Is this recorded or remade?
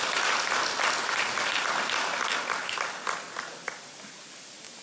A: recorded